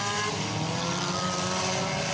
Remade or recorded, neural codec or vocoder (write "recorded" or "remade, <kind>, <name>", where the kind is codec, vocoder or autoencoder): recorded